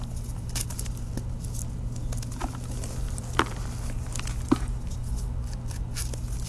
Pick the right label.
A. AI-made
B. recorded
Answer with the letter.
B